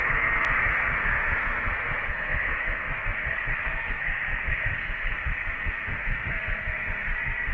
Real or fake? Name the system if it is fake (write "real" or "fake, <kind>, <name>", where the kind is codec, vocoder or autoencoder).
fake, codec, SNAC